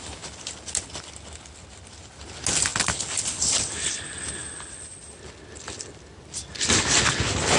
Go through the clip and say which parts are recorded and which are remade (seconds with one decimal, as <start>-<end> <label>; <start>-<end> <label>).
0.0-7.6 recorded